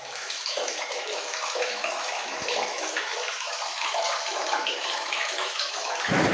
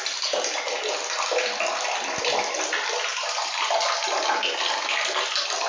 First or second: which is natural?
second